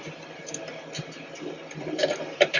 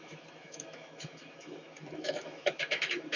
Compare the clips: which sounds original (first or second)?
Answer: first